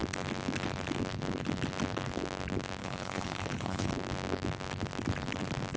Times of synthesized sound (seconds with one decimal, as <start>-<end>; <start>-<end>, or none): 2.8-3.9